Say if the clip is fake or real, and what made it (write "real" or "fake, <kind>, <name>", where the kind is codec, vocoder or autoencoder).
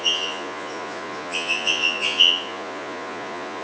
fake, vocoder, Vocos